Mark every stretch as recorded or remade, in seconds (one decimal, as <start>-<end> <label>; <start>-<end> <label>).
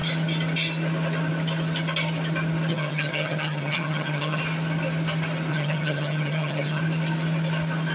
0.0-2.7 recorded; 2.7-4.4 remade; 4.4-5.5 recorded; 5.5-6.8 remade; 6.8-7.9 recorded